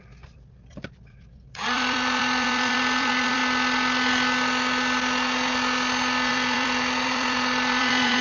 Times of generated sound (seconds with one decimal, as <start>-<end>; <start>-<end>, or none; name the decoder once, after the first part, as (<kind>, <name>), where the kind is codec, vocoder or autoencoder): 0.0-3.4 (vocoder, BigVGAN v2); 6.3-8.2